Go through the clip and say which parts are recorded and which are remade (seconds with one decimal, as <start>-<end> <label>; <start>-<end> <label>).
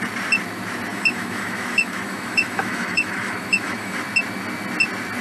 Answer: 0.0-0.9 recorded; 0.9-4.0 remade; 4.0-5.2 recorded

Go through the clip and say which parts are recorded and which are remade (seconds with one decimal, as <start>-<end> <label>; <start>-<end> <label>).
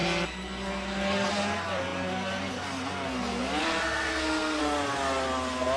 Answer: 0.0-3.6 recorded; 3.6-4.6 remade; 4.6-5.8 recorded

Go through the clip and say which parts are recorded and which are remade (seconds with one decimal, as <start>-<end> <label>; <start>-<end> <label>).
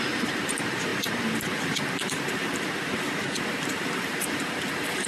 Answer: 0.0-5.1 remade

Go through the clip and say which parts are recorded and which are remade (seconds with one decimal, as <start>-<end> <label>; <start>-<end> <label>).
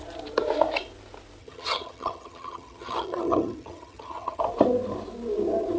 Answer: 0.0-1.4 recorded; 1.4-4.4 remade; 4.4-5.8 recorded